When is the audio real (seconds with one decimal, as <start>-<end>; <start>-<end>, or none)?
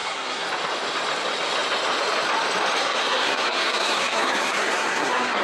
0.5-2.8